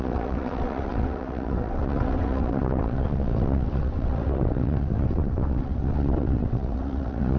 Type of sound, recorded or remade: remade